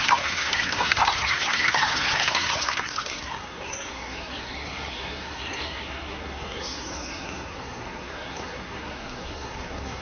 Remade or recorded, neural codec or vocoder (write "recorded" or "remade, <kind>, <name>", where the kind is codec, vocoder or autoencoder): remade, codec, SNAC